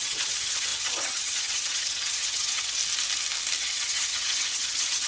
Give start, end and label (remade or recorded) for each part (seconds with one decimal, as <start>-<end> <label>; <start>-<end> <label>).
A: 0.0-2.8 remade; 2.8-3.6 recorded; 3.6-5.1 remade